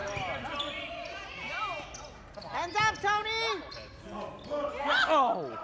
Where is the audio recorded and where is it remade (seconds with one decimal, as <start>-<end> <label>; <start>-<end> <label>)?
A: 0.0-5.6 recorded